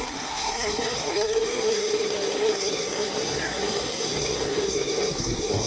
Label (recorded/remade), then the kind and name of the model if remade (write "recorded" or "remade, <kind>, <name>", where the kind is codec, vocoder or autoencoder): remade, codec, SNAC